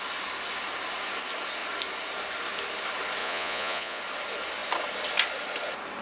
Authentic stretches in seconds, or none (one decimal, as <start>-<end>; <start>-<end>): 0.0-3.2; 4.0-6.0